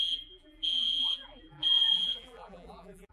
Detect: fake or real fake